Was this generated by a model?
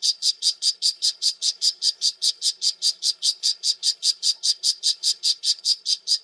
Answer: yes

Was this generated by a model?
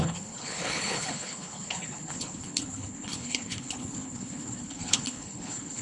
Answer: yes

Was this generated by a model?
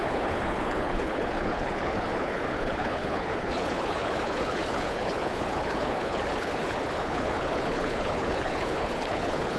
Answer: yes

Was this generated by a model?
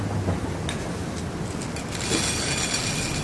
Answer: no